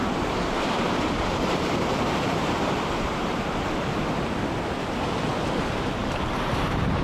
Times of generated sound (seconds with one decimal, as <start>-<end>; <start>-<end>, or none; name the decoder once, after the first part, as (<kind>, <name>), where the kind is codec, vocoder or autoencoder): 0.0-4.2 (vocoder, BigVGAN v2); 6.0-7.0